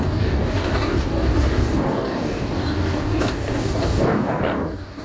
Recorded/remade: remade